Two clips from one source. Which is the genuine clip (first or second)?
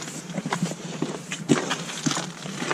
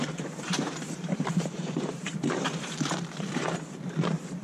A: first